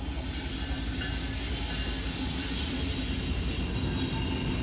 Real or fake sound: real